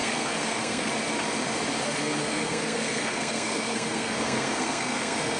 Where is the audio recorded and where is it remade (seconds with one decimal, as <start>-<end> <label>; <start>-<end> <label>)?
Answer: 0.0-0.9 remade; 0.9-2.0 recorded; 2.0-5.4 remade